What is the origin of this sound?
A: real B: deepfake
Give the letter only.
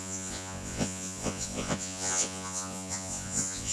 B